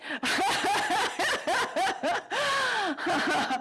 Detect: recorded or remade recorded